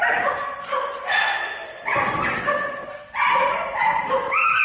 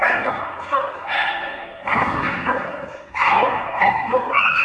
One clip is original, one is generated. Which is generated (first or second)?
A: second